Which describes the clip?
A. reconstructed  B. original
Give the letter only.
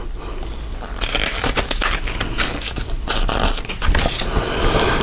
B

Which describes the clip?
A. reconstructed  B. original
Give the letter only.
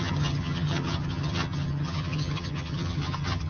A